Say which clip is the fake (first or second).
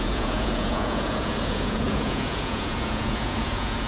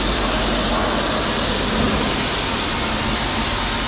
first